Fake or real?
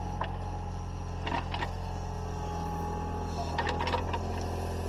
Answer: real